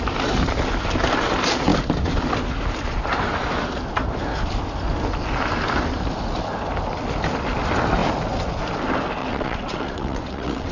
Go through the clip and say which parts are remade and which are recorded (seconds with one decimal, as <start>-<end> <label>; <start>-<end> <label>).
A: 0.0-9.2 recorded; 9.2-10.7 remade